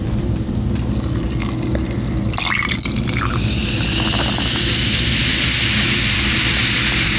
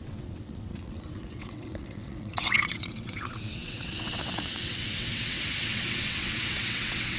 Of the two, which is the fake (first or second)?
second